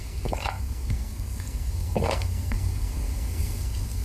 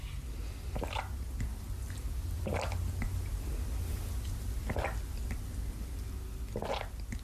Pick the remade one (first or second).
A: first